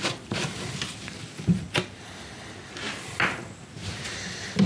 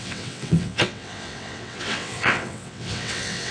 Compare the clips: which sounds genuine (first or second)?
first